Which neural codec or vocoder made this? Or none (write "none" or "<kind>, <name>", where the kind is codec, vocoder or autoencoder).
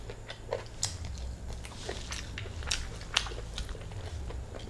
none